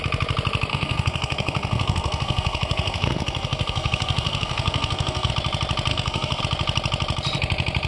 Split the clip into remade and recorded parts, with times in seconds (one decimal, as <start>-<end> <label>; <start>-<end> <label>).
0.0-0.7 recorded; 0.7-5.3 remade; 5.3-5.9 recorded; 5.9-6.4 remade; 6.4-7.9 recorded